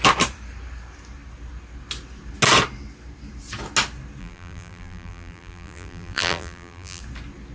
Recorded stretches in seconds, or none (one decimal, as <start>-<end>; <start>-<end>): 0.0-4.2; 7.0-7.5